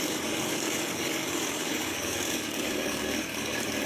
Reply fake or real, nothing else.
fake